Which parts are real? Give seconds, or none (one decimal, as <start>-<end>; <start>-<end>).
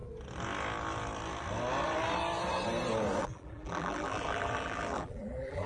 0.0-3.2